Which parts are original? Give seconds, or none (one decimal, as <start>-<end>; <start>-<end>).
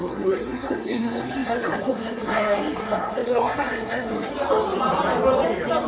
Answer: 4.3-5.9